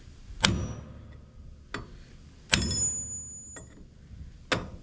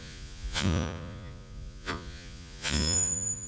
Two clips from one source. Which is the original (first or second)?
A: first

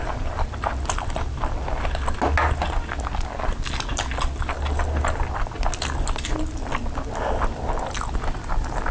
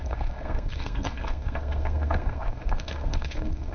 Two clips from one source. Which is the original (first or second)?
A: first